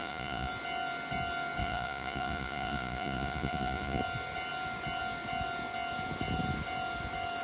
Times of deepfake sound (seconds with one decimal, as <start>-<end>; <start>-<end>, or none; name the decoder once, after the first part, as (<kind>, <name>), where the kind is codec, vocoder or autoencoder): 0.0-0.5 (vocoder, Vocos); 1.6-4.0